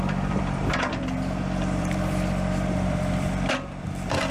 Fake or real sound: fake